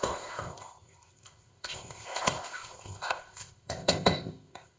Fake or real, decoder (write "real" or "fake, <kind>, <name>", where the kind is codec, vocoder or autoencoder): fake, codec, ZipCodec